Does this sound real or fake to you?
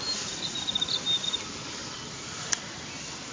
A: real